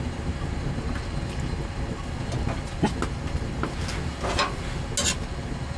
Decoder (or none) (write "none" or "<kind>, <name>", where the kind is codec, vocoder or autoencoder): none